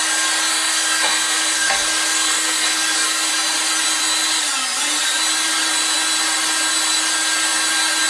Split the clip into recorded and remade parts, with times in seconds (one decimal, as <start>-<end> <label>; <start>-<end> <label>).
0.0-0.5 recorded; 0.5-3.3 remade; 3.3-8.1 recorded